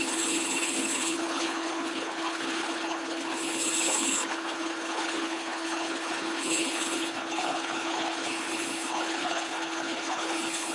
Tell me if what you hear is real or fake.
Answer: fake